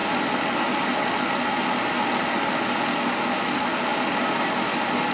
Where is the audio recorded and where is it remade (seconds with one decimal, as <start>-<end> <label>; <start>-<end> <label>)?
0.0-5.1 recorded